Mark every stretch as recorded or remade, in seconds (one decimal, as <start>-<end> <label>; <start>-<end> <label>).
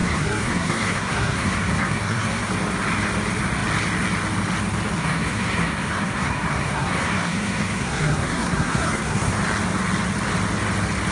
0.0-2.5 remade; 2.5-5.0 recorded; 5.0-9.3 remade; 9.3-11.1 recorded